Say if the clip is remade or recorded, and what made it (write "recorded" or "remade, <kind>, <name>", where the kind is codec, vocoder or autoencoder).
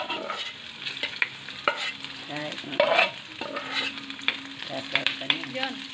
remade, vocoder, BigVGAN v2